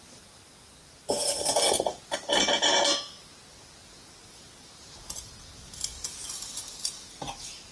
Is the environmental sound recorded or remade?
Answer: recorded